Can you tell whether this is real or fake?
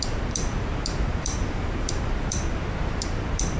fake